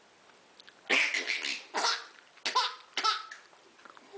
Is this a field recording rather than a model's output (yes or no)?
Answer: yes